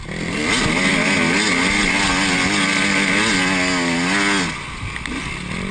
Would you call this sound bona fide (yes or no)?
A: yes